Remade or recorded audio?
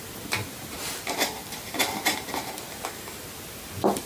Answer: recorded